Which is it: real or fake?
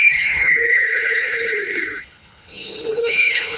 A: fake